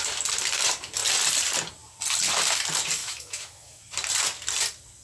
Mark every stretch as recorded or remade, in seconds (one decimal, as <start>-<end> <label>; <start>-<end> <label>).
0.0-3.0 recorded; 3.0-3.8 remade; 3.8-5.0 recorded